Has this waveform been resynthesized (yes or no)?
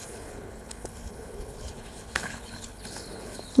yes